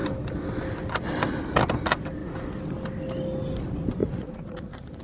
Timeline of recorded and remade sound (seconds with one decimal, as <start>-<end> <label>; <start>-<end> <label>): 0.0-4.0 recorded; 4.0-5.0 remade